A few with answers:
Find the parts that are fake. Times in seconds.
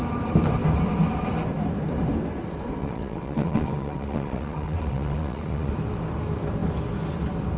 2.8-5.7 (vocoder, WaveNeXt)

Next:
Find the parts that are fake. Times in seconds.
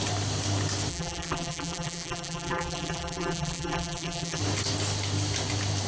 0.9-4.4 (vocoder, BigVGAN v2)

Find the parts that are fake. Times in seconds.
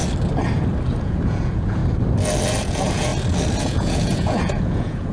1.0-1.8 (vocoder, Vocos); 2.6-3.1; 3.6-5.1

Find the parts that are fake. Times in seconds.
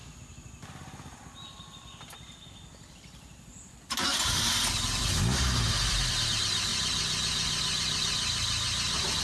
2.9-6.7 (vocoder, BigVGAN v2)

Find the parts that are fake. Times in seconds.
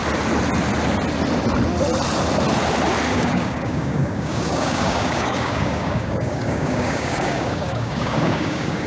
3.1-8.9 (codec, DAC)